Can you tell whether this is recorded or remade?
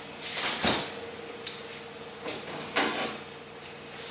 recorded